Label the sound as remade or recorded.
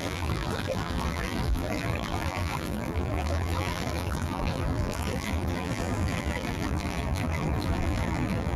remade